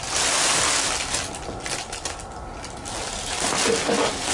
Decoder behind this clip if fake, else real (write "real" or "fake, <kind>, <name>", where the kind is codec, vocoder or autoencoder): real